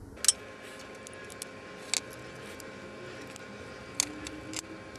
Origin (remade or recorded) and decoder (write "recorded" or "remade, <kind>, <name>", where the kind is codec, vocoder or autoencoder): recorded